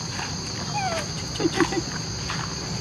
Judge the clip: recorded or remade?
recorded